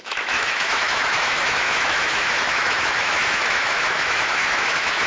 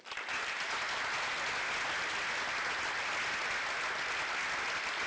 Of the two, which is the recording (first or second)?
second